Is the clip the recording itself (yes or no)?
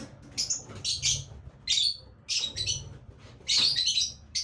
yes